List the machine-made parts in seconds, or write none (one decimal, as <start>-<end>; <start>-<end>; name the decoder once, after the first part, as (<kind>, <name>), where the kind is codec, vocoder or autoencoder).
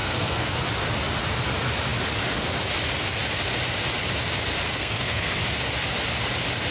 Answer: 0.0-0.6 (codec, SNAC); 4.8-5.4